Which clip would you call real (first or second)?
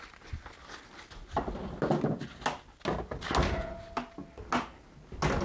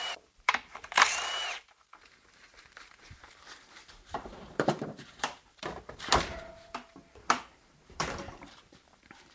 first